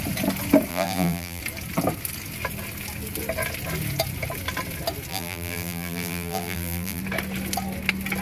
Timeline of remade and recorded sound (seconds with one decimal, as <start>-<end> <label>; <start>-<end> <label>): 0.0-0.7 recorded; 0.7-1.4 remade; 1.4-5.1 recorded; 5.1-7.0 remade; 7.0-8.2 recorded